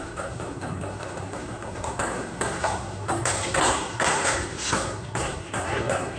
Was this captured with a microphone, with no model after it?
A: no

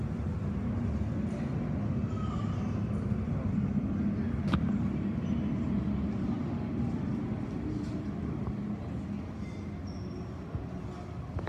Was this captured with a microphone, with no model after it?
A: yes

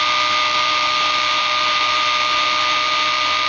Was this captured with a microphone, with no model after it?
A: yes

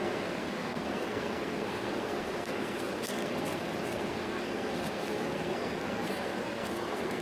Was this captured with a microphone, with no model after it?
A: no